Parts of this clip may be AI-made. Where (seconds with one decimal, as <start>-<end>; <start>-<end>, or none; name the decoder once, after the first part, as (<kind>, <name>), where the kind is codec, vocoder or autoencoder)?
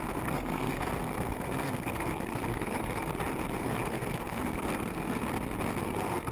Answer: 0.0-3.1 (codec, SNAC); 3.6-5.2; 5.8-6.3